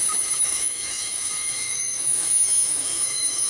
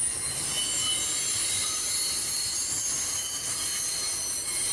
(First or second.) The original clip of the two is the second